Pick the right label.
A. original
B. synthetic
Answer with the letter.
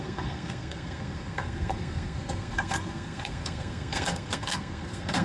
B